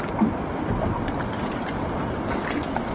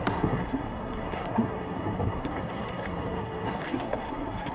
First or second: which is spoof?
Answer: second